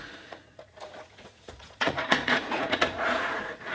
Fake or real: fake